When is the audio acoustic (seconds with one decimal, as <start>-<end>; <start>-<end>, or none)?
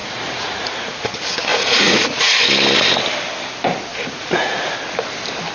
1.1-1.5; 2.4-3.9; 4.7-5.5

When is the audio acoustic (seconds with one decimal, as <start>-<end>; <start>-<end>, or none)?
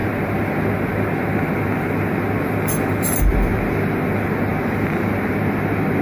0.0-6.0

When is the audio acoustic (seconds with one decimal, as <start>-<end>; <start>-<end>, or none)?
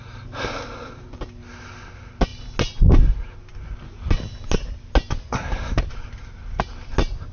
0.0-7.3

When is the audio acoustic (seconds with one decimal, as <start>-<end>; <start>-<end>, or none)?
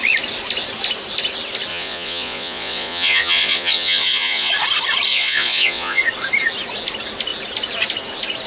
0.0-1.7; 4.5-5.1; 6.0-8.5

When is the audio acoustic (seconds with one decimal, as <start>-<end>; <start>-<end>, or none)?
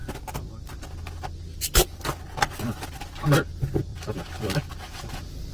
0.0-5.5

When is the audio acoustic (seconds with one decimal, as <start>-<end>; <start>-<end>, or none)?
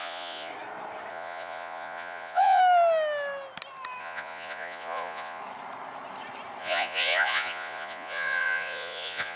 0.5-1.1; 2.6-4.0; 5.4-6.6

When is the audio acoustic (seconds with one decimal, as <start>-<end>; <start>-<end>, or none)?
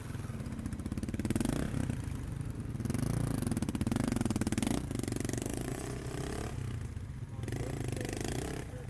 0.0-5.5; 6.0-8.9